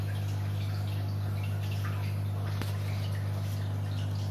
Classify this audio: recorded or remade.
recorded